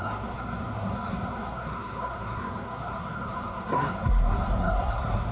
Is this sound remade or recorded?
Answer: remade